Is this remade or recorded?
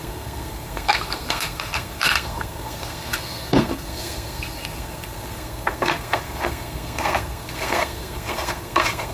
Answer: remade